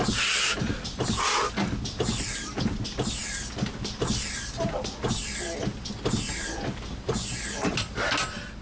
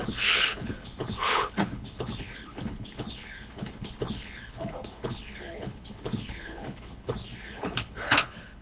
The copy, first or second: second